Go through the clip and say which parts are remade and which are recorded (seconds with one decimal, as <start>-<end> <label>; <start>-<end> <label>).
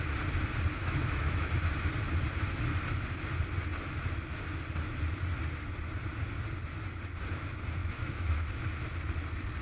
0.0-0.8 recorded; 0.8-1.5 remade; 1.5-7.8 recorded; 7.8-8.6 remade; 8.6-9.6 recorded